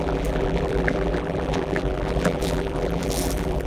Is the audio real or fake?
fake